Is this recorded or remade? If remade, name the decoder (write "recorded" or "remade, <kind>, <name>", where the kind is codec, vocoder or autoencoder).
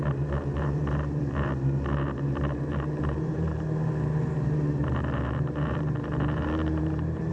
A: remade, vocoder, BigVGAN v2